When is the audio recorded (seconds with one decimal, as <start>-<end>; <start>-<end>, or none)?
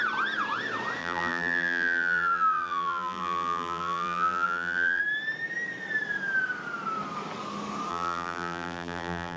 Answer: 0.0-1.0; 5.0-7.9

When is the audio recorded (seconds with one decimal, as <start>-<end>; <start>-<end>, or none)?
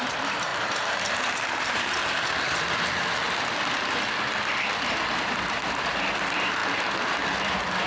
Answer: 0.5-1.6; 2.0-5.3; 6.6-7.4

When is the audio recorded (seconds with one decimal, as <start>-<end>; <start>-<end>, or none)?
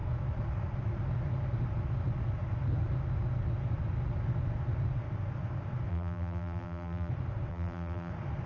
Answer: 0.0-5.9; 7.1-7.5; 8.1-8.5